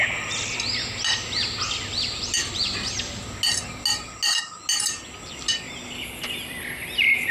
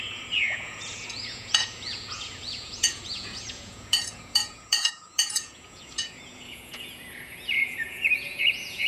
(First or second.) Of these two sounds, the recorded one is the first